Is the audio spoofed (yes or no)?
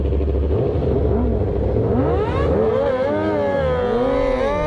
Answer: no